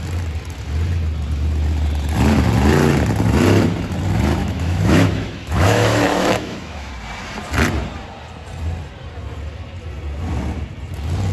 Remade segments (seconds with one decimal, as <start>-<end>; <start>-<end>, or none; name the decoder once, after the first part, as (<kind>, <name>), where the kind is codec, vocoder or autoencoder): 4.4-6.9 (autoencoder, DAC-VAE)